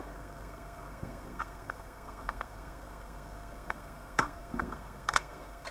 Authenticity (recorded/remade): remade